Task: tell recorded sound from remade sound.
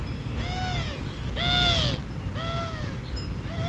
recorded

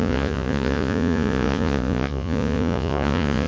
remade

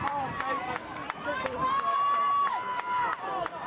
remade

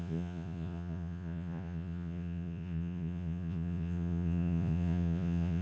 remade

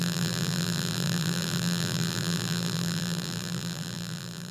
remade